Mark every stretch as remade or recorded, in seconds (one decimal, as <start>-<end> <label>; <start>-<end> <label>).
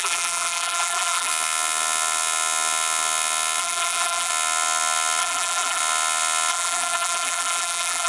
0.0-1.3 remade; 1.3-3.6 recorded; 3.6-4.3 remade; 4.3-5.2 recorded; 5.2-5.8 remade; 5.8-6.5 recorded; 6.5-8.1 remade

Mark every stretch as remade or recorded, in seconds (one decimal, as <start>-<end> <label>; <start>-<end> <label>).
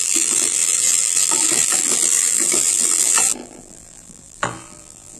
0.0-5.2 remade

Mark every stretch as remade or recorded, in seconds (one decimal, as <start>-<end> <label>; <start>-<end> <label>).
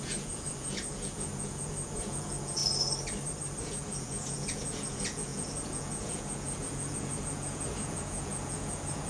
0.0-2.6 remade; 2.6-3.6 recorded; 3.6-9.1 remade